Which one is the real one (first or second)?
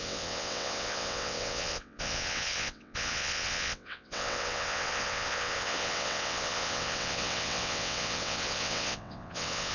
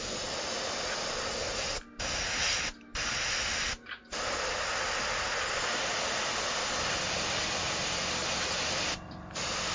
second